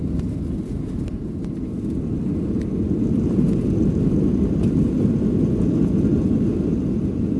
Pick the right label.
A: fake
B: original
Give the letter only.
B